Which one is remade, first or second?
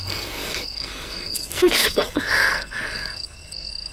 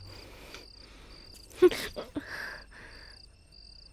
first